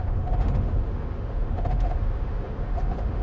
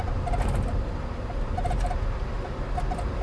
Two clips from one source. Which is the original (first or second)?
second